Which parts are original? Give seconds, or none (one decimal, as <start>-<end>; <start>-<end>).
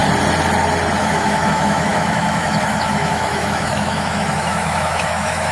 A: 0.0-1.0